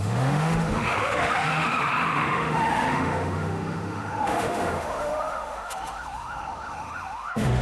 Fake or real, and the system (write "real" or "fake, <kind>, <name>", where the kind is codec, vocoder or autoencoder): fake, autoencoder, DAC-VAE